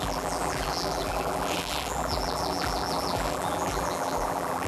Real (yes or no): no